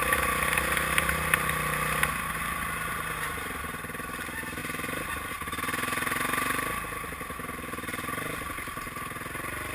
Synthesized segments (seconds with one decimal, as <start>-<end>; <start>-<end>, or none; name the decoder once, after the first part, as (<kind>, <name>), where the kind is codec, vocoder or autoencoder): 4.6-5.3 (vocoder, BigVGAN v2)